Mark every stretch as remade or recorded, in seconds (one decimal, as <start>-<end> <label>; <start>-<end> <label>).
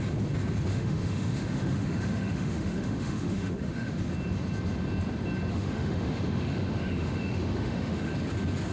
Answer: 0.0-0.7 recorded; 0.7-4.0 remade; 4.0-5.5 recorded; 5.5-8.1 remade; 8.1-8.7 recorded